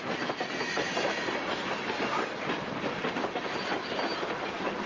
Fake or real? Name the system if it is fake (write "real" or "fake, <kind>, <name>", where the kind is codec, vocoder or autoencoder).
real